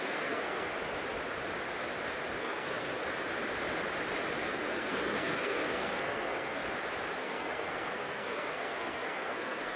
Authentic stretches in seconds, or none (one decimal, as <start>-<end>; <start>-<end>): 0.7-2.4; 3.0-4.4; 6.6-7.2